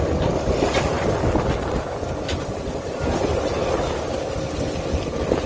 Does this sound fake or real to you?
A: real